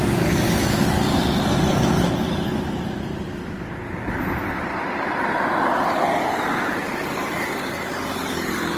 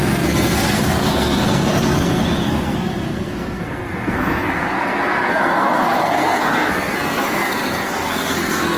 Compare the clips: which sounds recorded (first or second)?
first